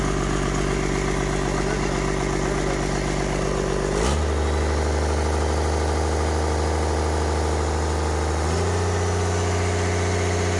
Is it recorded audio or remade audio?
recorded